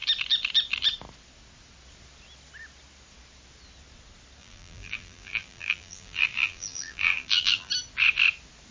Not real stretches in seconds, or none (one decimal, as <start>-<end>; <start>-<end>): 4.4-7.7